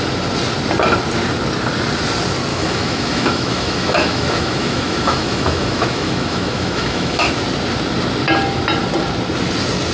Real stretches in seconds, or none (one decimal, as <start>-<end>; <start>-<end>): 0.0-2.5; 7.3-9.9